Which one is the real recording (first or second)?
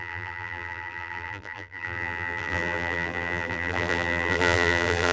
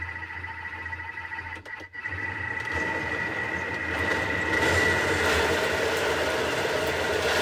second